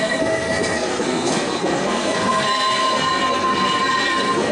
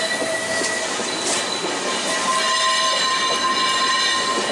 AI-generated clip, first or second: first